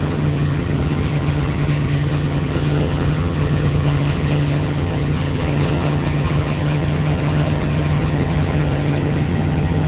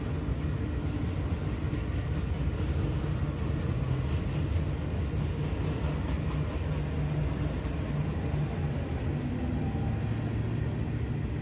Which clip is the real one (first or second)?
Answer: second